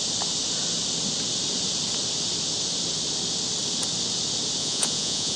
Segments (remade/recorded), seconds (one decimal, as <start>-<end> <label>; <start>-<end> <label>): 0.0-4.6 recorded; 4.6-5.4 remade